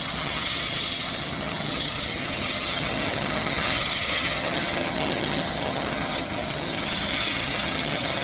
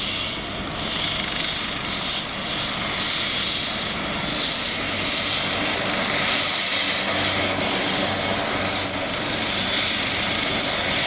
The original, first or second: second